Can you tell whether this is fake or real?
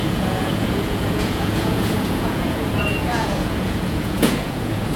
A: fake